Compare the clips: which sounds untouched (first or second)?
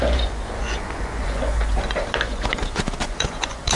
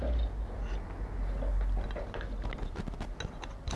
second